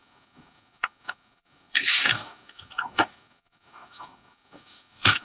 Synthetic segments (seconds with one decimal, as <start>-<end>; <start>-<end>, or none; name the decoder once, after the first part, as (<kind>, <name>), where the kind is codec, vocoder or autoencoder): 0.0-5.2 (codec, DAC)